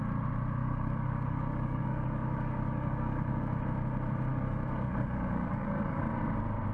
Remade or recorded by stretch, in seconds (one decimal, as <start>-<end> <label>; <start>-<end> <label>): 0.0-0.6 recorded; 0.6-3.6 remade; 3.6-4.3 recorded; 4.3-6.0 remade; 6.0-6.7 recorded

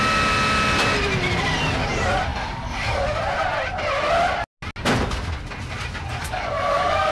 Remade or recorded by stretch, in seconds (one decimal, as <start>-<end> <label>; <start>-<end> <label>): 0.0-2.3 recorded; 2.3-3.2 remade; 3.2-6.2 recorded; 6.2-7.1 remade

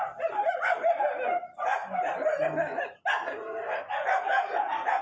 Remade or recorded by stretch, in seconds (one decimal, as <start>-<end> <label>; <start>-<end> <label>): 0.0-5.0 recorded

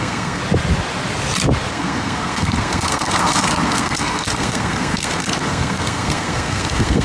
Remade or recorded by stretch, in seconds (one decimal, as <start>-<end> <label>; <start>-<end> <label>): 0.0-0.4 remade; 0.4-1.7 recorded; 1.7-7.0 remade

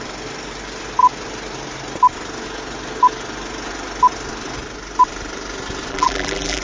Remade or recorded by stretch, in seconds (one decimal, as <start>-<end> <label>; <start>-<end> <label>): 0.0-5.9 recorded; 5.9-6.6 remade

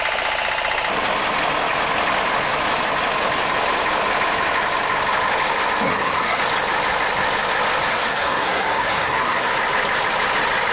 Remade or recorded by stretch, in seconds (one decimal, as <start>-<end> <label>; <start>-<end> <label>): 0.0-5.9 recorded; 5.9-6.4 remade; 6.4-7.9 recorded; 7.9-9.5 remade; 9.5-10.7 recorded

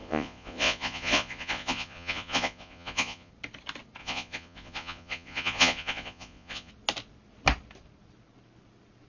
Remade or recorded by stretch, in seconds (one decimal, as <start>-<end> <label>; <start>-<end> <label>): 0.0-3.3 remade; 3.3-4.0 recorded; 4.0-6.7 remade; 6.7-9.1 recorded